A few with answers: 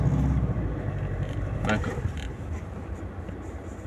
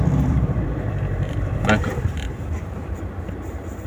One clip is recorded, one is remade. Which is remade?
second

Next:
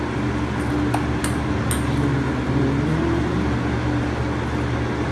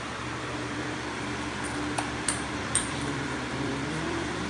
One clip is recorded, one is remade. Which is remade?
second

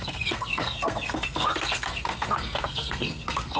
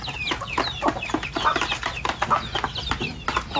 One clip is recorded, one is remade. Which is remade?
first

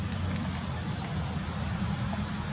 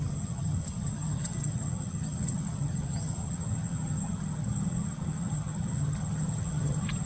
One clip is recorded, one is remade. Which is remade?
second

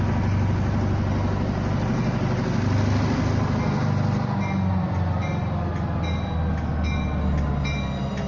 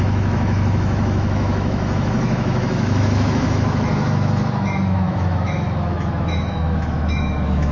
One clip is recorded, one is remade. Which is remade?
second